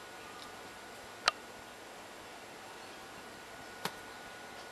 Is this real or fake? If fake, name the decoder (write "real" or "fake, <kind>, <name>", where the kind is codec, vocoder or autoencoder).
real